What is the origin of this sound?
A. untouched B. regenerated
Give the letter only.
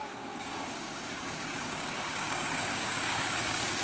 B